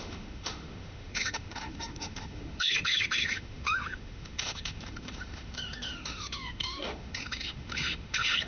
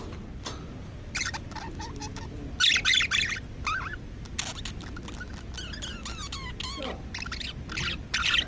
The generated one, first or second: first